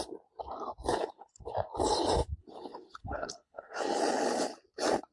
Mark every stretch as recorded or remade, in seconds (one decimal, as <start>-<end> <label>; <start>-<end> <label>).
0.0-0.9 recorded; 0.9-1.4 remade; 1.4-2.4 recorded; 2.4-3.8 remade; 3.8-5.1 recorded